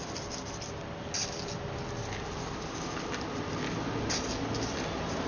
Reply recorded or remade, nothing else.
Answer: recorded